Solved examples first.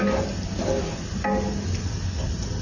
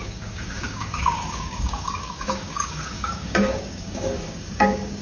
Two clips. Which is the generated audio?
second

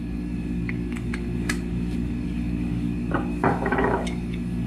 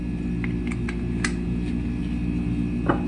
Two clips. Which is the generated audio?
first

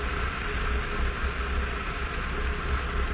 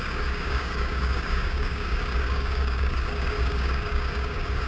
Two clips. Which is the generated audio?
second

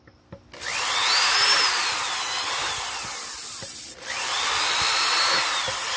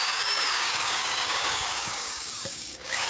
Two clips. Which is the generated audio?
second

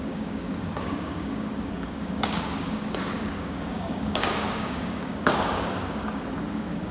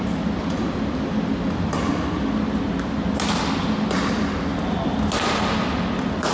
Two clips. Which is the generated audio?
first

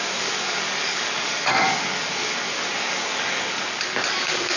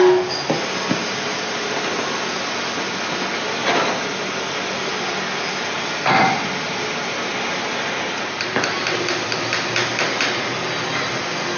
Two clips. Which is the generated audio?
first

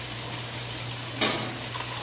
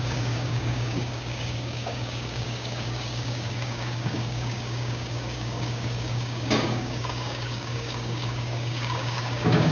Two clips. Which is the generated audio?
second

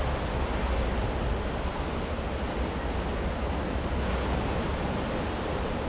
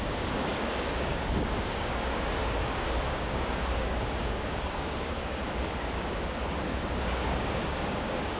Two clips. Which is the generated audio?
second